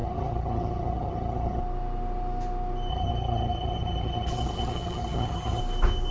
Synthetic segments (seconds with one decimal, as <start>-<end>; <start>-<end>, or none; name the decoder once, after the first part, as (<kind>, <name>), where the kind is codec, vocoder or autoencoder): 0.0-1.6 (vocoder, HiFi-GAN); 2.9-5.6